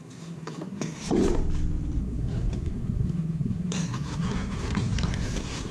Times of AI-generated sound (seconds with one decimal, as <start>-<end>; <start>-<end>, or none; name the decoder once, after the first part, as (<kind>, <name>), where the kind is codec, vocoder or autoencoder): 0.0-1.2 (codec, SNAC); 2.0-5.7